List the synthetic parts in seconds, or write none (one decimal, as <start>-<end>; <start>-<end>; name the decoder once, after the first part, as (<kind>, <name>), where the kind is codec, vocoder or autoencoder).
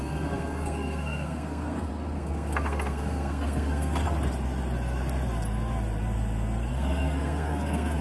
0.0-4.0 (codec, SNAC); 6.7-8.0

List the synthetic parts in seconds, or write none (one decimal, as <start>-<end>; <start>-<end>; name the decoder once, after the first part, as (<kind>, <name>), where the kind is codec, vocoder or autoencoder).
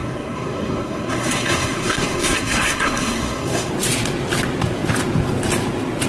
0.0-3.7 (codec, SNAC)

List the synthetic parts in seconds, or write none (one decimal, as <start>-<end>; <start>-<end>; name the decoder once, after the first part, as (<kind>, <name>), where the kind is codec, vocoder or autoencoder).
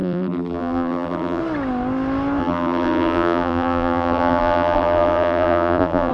0.0-1.4 (vocoder, BigVGAN v2); 2.4-6.1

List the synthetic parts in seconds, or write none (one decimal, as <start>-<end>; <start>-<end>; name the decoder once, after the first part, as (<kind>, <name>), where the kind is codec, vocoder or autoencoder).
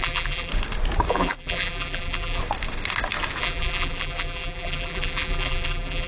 0.0-0.5 (vocoder, BigVGAN v2); 1.1-2.4; 3.4-6.1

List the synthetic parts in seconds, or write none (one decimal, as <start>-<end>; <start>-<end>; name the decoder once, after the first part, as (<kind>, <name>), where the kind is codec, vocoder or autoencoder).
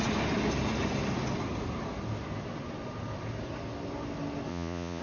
4.5-5.0 (vocoder, Vocos)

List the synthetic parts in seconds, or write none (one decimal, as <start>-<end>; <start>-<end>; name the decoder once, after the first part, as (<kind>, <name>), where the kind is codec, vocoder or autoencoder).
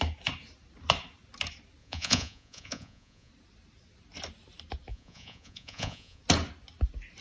1.8-3.3 (vocoder, Vocos); 4.9-6.2